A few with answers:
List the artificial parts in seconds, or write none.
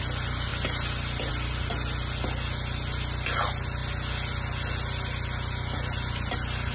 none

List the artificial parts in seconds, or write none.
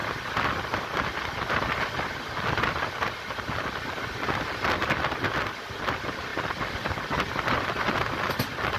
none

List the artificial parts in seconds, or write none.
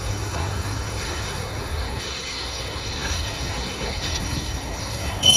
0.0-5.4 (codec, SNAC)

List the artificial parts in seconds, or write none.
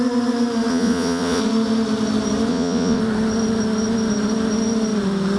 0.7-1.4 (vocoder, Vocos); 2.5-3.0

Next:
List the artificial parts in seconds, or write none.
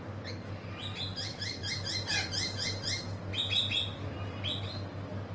1.1-1.7 (vocoder, BigVGAN v2)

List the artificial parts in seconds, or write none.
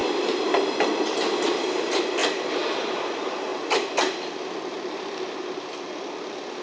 none